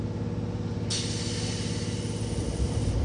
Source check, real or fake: real